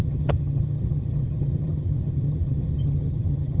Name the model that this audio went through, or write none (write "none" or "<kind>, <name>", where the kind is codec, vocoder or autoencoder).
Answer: vocoder, HiFi-GAN